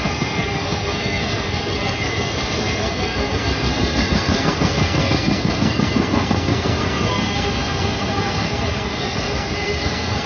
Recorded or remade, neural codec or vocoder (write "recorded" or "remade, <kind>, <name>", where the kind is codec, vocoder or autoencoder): remade, codec, SNAC